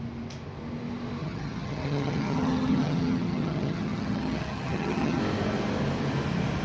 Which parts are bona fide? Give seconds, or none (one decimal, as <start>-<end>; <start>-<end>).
0.0-1.2; 5.2-6.6